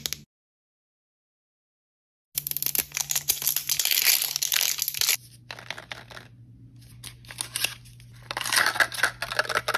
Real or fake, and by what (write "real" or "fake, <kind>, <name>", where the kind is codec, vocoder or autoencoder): real